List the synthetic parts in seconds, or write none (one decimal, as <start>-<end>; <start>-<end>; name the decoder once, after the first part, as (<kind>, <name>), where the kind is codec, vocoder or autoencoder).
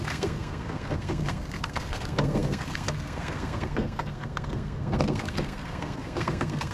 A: 0.0-6.7 (codec, SNAC)